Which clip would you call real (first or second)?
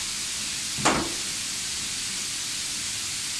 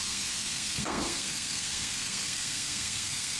first